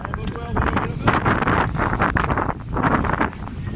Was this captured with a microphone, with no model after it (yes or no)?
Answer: no